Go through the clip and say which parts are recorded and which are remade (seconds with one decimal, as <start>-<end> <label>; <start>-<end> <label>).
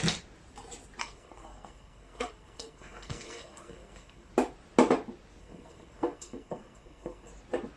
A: 0.0-1.0 recorded; 1.0-4.3 remade; 4.3-5.4 recorded; 5.4-7.3 remade; 7.3-7.8 recorded